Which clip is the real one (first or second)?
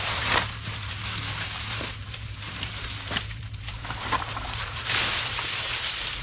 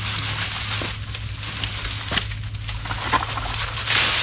second